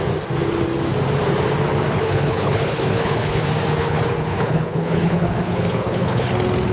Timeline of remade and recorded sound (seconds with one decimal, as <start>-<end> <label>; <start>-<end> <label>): 0.0-1.9 recorded; 1.9-3.4 remade; 3.4-3.8 recorded; 3.8-6.3 remade; 6.3-6.7 recorded